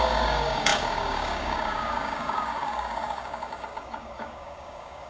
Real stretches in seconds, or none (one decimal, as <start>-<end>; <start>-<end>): none